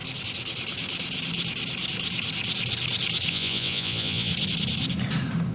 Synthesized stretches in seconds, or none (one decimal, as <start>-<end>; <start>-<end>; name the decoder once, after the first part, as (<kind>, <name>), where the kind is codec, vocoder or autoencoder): 3.3-4.3 (vocoder, Vocos)